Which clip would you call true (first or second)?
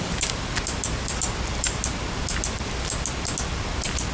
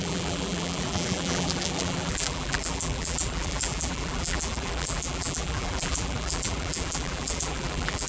first